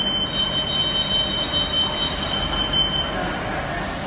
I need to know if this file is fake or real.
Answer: real